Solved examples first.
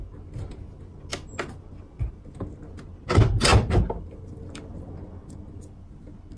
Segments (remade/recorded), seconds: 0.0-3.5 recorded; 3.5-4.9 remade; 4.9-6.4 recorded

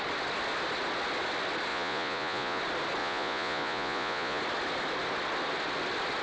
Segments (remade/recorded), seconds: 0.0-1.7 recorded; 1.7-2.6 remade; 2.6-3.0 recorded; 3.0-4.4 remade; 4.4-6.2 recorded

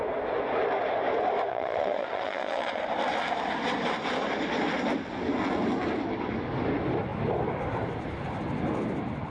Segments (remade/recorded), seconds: 0.0-1.5 recorded; 1.5-2.8 remade; 2.8-9.3 recorded

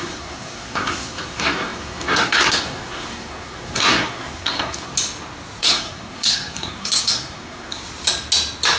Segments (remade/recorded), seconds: 0.0-4.9 remade; 4.9-5.6 recorded; 5.6-7.8 remade; 7.8-8.8 recorded

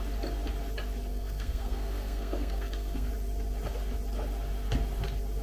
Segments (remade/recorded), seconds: 0.0-1.1 recorded; 1.1-3.1 remade; 3.1-5.4 recorded